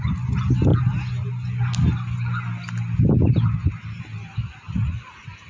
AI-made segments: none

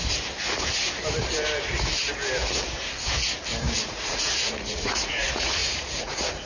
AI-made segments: 3.9-6.5 (vocoder, Vocos)

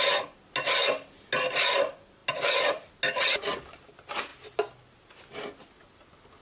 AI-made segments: none

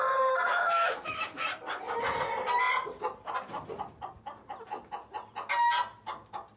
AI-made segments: 0.5-1.4 (autoencoder, DAC-VAE)